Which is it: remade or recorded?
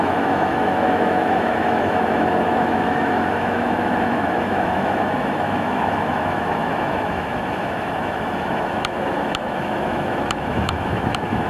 remade